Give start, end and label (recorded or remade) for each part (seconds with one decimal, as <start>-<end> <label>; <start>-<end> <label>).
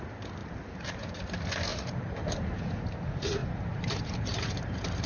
0.0-0.4 recorded; 0.4-1.2 remade; 1.2-1.7 recorded; 1.7-2.8 remade; 2.8-3.4 recorded; 3.4-5.1 remade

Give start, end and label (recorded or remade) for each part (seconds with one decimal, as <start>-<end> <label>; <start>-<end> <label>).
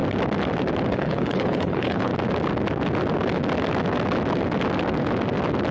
0.0-0.9 recorded; 0.9-2.1 remade; 2.1-5.7 recorded